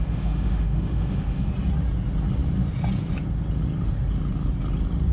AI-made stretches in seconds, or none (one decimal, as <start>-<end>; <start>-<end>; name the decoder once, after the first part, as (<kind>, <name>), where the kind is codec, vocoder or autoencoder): 0.0-1.5 (autoencoder, DAC-VAE)